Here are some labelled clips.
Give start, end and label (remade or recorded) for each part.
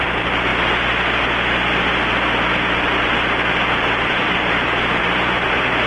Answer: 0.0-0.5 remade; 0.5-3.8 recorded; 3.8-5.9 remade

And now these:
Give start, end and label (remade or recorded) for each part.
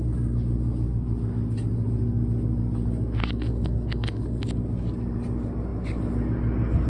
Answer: 0.0-3.2 recorded; 3.2-4.4 remade; 4.4-6.9 recorded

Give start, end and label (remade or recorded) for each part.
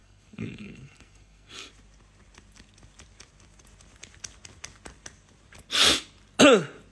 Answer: 0.0-1.7 remade; 1.7-6.9 recorded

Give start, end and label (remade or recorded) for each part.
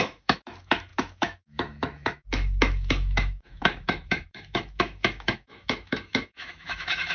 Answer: 0.0-7.1 remade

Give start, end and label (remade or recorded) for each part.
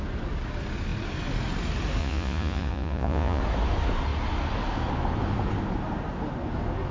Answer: 0.0-2.0 recorded; 2.0-3.4 remade; 3.4-6.9 recorded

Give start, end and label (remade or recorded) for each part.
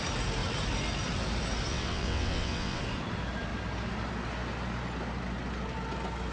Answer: 0.0-1.7 recorded; 1.7-2.8 remade; 2.8-6.3 recorded